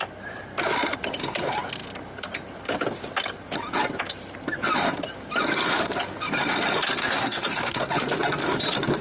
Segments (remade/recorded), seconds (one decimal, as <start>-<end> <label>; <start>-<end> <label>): 0.0-7.0 recorded; 7.0-7.8 remade; 7.8-9.0 recorded